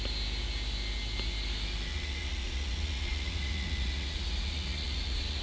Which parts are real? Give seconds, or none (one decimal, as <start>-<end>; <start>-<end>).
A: 0.0-1.9